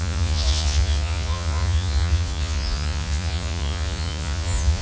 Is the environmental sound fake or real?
fake